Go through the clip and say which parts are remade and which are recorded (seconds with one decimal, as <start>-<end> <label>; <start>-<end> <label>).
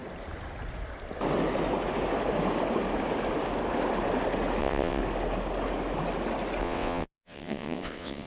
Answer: 0.0-4.6 recorded; 4.6-5.0 remade; 5.0-6.6 recorded; 6.6-8.3 remade